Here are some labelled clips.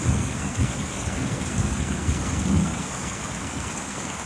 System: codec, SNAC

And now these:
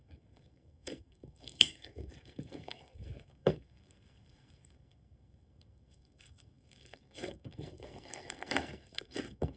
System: codec, SNAC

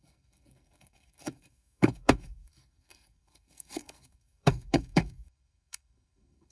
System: codec, SNAC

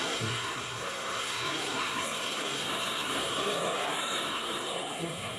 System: codec, SNAC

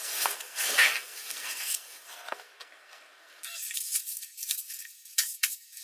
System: codec, SNAC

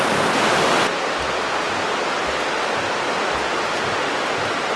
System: none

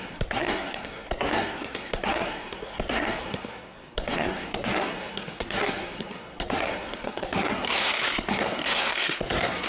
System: codec, SNAC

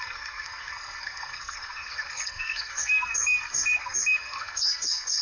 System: codec, SNAC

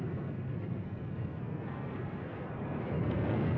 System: codec, SNAC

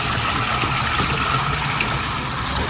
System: none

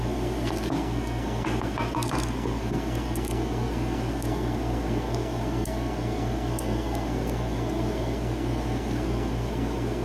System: codec, SNAC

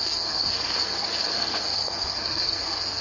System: codec, SNAC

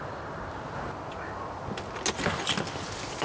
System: none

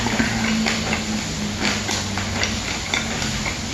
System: none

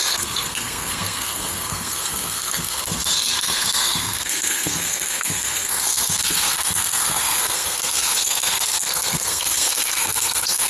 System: codec, SNAC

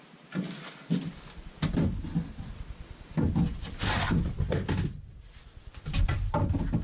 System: none